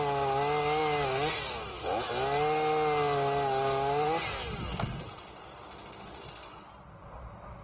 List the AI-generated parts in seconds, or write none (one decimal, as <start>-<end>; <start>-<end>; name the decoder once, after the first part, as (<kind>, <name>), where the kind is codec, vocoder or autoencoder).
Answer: none